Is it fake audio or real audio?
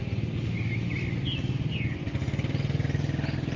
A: real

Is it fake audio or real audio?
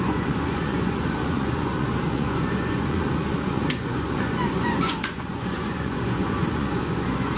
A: fake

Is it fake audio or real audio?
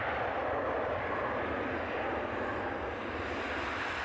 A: real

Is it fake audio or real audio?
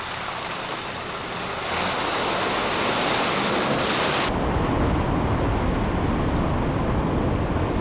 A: real